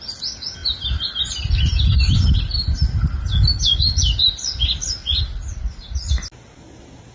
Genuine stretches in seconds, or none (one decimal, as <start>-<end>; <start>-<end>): 0.0-5.0; 6.1-7.1

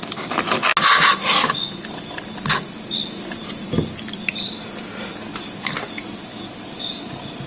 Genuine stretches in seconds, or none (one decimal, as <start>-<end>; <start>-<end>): 0.0-7.5

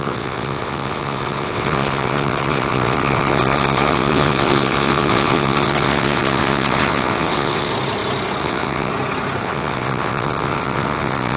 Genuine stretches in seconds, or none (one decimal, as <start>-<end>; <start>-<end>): 7.7-8.4; 8.9-9.4